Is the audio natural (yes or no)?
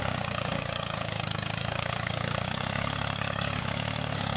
no